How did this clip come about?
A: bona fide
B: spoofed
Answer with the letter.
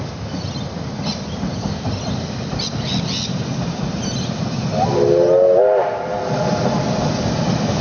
A